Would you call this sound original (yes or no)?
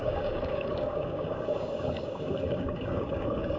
no